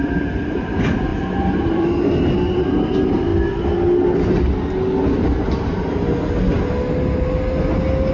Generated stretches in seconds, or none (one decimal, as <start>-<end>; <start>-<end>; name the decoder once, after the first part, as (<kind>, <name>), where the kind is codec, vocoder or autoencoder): 0.0-3.3 (vocoder, BigVGAN v2)